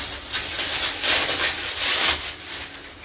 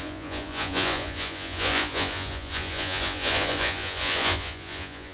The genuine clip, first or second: first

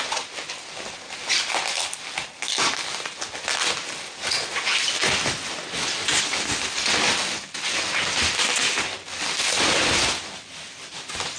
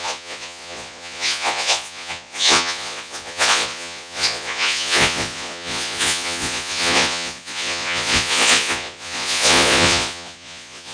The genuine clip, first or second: first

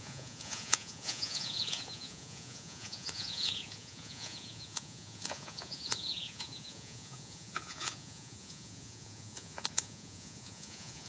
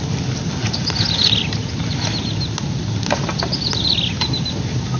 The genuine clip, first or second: second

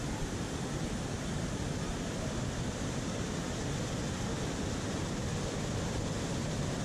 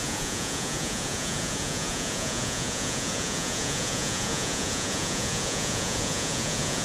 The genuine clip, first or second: first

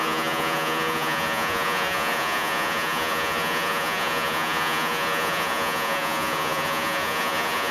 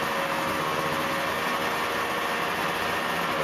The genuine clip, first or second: second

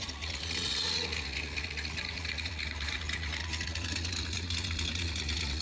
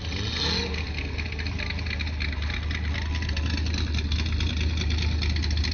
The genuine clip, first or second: second